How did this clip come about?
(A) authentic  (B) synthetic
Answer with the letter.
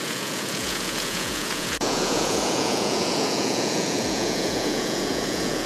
B